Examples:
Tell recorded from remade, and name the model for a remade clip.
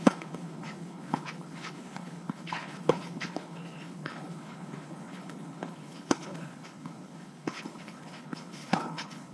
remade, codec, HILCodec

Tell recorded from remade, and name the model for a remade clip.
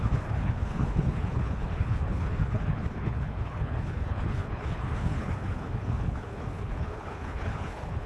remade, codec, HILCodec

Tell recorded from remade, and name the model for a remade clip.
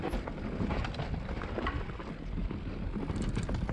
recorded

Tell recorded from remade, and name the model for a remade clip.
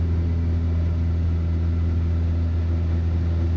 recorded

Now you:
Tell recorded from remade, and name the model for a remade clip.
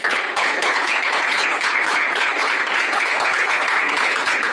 remade, codec, HILCodec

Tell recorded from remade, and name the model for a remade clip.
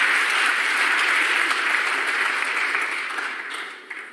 recorded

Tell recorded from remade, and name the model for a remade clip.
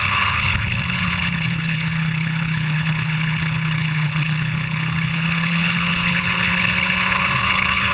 remade, codec, HILCodec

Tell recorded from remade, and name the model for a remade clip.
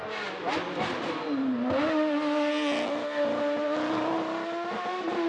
recorded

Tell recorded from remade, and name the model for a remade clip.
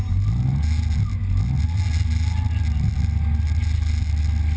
recorded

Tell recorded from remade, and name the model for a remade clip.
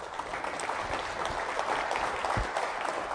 recorded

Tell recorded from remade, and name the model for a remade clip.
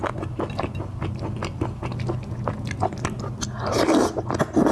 recorded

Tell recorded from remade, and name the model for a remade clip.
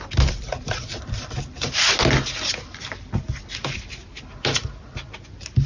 recorded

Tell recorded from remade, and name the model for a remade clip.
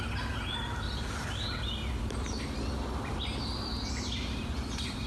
recorded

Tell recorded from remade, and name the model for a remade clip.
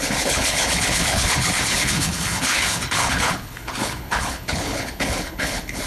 remade, codec, HILCodec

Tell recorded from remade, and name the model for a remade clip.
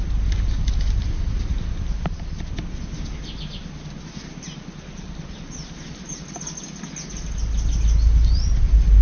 recorded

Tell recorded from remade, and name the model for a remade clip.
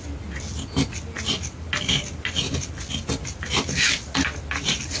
recorded